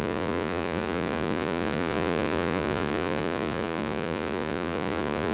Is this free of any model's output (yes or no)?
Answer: no